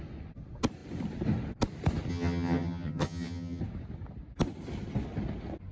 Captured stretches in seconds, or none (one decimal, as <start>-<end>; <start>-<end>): 0.0-2.1; 3.6-5.7

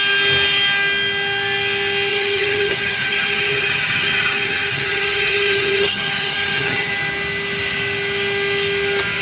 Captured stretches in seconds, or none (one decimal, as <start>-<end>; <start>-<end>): 0.0-2.1; 6.9-9.2

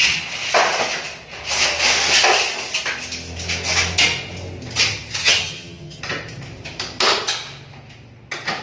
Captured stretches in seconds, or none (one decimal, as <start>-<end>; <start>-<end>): 0.0-5.2; 6.0-8.6